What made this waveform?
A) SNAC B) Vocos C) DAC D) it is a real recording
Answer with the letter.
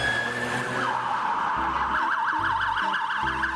D